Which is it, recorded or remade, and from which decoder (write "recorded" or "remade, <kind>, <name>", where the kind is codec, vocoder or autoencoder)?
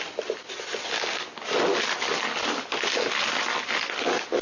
recorded